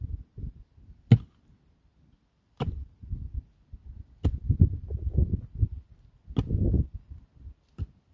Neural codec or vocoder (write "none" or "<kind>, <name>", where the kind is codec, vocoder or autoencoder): none